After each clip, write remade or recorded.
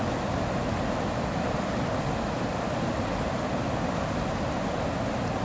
recorded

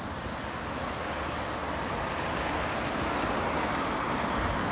recorded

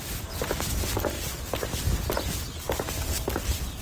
recorded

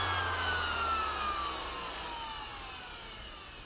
recorded